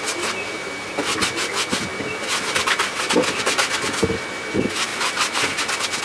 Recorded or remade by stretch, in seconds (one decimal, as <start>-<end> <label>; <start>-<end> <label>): 0.0-6.0 recorded